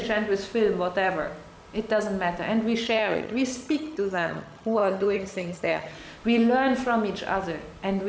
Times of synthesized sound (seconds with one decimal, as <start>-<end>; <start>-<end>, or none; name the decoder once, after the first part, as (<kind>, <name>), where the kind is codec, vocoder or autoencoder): 2.8-6.0 (vocoder, HiFi-GAN)